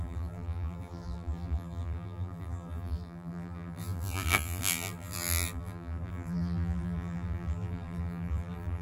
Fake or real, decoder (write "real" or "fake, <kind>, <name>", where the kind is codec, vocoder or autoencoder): fake, vocoder, BigVGAN v2